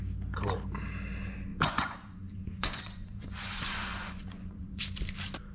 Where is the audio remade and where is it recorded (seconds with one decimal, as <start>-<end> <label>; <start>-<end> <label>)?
0.0-1.5 recorded; 1.5-4.8 remade; 4.8-5.5 recorded